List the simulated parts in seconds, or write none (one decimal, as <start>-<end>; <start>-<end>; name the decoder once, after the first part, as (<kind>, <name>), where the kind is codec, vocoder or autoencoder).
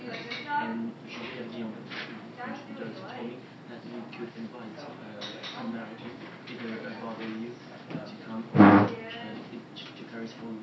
none